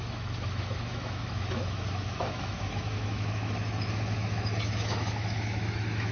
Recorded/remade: remade